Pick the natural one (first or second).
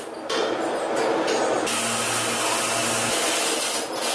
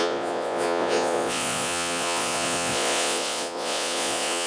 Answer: first